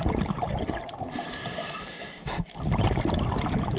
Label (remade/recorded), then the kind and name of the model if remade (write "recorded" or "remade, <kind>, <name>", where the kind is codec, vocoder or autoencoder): recorded